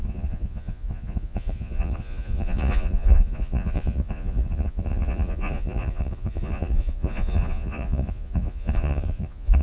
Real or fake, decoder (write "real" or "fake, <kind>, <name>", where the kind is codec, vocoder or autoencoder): fake, vocoder, Vocos